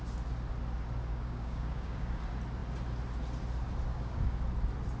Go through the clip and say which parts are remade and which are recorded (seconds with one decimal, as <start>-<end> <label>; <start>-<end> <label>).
0.0-1.1 recorded; 1.1-2.2 remade; 2.2-3.9 recorded; 3.9-4.4 remade; 4.4-5.0 recorded